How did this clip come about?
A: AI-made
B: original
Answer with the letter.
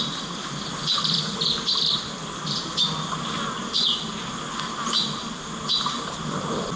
B